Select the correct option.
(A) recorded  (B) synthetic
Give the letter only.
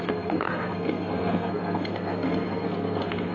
B